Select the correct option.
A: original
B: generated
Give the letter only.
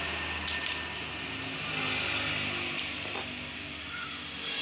A